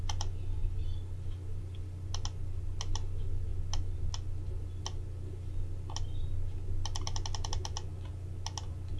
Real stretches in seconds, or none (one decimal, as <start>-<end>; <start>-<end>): 0.0-9.0